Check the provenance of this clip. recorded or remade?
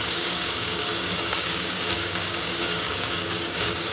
remade